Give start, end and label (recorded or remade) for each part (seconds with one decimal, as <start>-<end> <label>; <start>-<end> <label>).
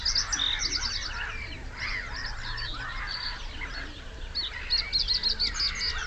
0.0-6.1 recorded